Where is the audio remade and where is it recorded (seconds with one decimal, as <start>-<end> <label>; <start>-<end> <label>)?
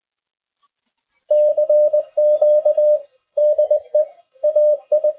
0.0-1.5 recorded; 1.5-3.4 remade; 3.4-4.0 recorded; 4.0-5.2 remade